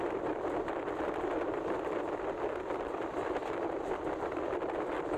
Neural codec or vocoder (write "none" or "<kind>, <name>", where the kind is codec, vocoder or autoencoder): none